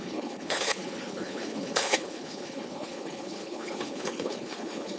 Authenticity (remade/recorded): remade